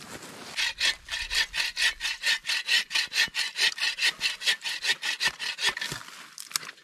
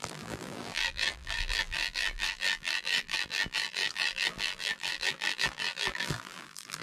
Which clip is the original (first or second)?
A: first